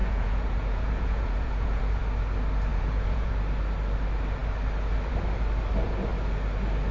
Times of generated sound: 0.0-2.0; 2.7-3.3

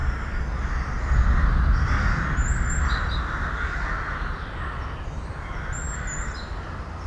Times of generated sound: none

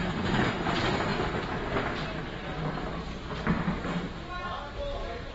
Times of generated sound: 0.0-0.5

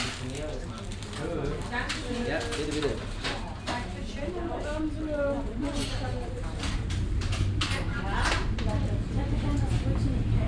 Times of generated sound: 3.9-8.8